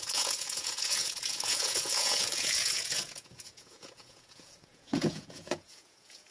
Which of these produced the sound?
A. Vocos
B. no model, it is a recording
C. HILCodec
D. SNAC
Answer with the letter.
A